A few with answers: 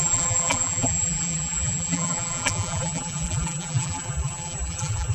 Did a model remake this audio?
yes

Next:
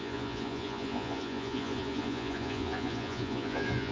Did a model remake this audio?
yes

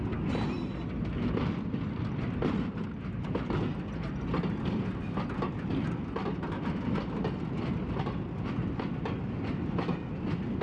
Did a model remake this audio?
no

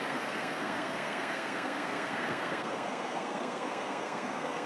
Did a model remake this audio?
yes